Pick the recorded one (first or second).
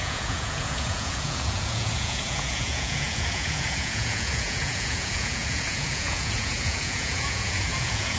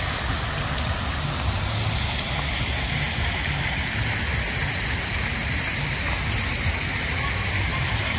second